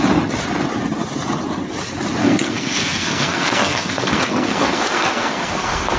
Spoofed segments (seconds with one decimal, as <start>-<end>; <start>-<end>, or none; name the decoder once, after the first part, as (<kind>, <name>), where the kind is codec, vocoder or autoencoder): 2.2-6.0 (codec, SNAC)